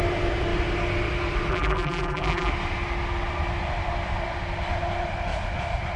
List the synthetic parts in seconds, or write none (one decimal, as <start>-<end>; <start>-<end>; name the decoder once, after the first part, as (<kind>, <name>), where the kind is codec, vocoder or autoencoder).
1.5-2.5 (vocoder, BigVGAN v2)